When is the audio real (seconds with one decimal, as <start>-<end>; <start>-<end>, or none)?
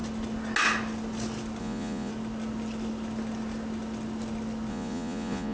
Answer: 0.0-1.6; 2.1-4.7